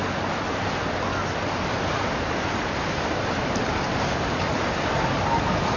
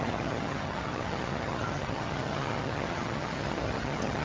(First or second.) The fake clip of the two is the second